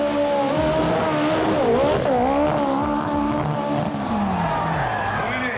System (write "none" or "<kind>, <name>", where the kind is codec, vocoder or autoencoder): none